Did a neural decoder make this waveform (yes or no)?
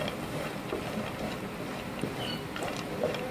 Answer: no